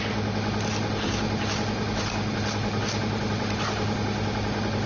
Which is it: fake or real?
real